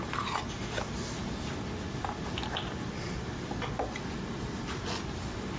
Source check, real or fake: real